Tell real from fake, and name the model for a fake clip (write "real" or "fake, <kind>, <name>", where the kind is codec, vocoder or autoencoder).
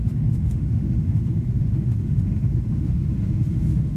fake, autoencoder, DAC-VAE